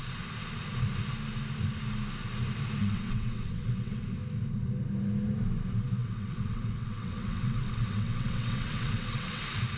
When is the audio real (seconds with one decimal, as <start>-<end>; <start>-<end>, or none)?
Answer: 0.0-2.8; 4.0-6.0; 9.4-9.8